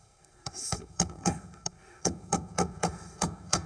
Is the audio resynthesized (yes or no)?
yes